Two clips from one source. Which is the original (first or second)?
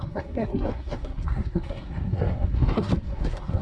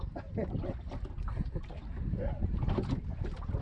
second